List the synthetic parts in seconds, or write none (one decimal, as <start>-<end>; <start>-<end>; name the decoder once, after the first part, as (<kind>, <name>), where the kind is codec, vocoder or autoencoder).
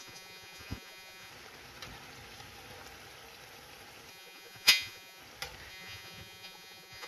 0.0-1.3 (vocoder, Vocos); 4.1-5.2; 5.7-7.1